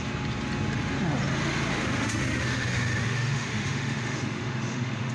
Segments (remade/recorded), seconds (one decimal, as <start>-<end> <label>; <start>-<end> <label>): 0.0-1.7 recorded; 1.7-5.1 remade